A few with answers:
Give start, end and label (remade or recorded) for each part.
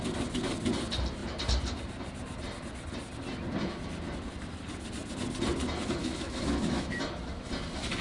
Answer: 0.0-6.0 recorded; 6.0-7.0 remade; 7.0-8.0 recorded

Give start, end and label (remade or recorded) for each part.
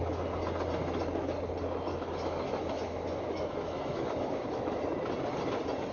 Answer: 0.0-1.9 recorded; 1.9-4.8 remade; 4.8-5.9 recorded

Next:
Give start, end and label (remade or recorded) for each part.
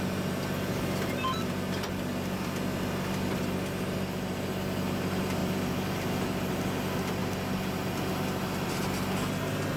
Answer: 0.0-9.8 recorded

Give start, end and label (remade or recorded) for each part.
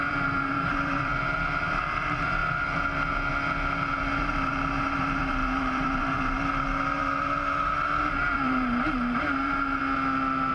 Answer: 0.0-1.1 remade; 1.1-1.7 recorded; 1.7-2.4 remade; 2.4-4.0 recorded; 4.0-9.8 remade; 9.8-10.5 recorded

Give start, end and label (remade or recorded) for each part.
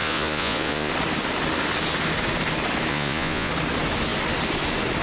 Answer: 0.0-0.9 remade; 0.9-2.9 recorded; 2.9-3.5 remade; 3.5-5.0 recorded